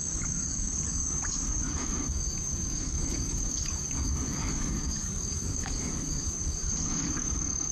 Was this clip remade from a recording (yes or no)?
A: yes